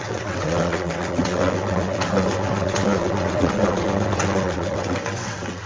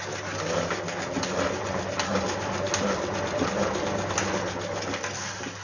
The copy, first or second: first